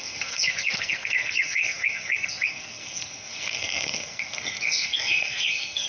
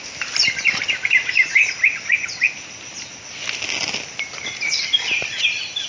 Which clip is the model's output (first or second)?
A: first